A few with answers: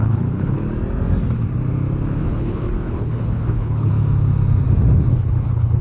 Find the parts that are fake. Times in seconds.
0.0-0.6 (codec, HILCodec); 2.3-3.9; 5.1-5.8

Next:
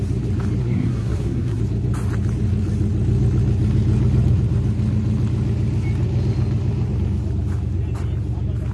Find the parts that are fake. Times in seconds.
0.6-1.6 (codec, SNAC)

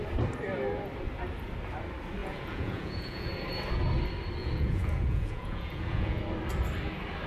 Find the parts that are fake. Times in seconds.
2.2-3.3 (vocoder, Vocos); 4.4-6.2

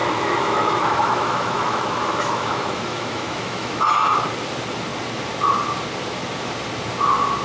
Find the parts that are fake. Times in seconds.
0.0-3.8 (autoencoder, DAC-VAE)